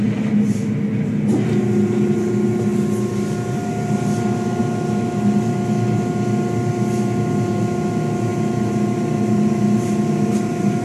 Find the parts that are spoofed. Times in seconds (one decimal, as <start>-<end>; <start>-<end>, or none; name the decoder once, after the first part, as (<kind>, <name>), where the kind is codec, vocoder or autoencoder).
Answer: none